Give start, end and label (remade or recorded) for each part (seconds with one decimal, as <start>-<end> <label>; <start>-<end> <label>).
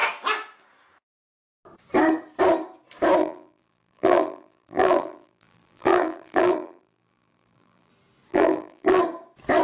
0.0-3.2 recorded; 3.2-7.9 remade; 7.9-8.3 recorded; 8.3-9.0 remade; 9.0-9.6 recorded